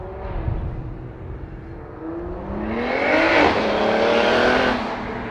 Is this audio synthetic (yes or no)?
no